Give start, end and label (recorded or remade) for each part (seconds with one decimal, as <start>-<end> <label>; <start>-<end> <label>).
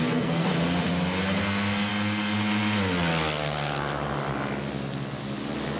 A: 0.0-0.5 remade; 0.5-1.4 recorded; 1.4-1.9 remade; 1.9-5.8 recorded